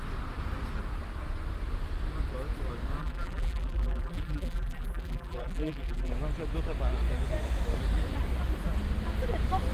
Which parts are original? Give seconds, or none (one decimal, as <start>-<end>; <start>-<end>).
0.0-3.0; 6.1-9.7